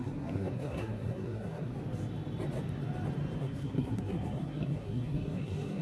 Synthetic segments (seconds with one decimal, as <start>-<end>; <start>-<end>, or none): 0.0-1.7; 3.4-5.8